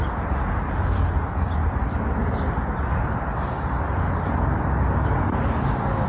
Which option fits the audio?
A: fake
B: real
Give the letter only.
B